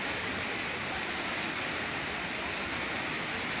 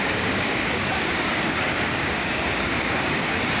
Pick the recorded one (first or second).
first